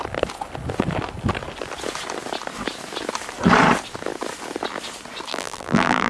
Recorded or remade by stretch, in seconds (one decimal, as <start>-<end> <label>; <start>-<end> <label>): 0.0-5.3 recorded; 5.3-6.1 remade